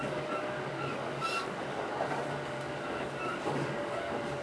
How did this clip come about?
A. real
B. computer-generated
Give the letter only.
B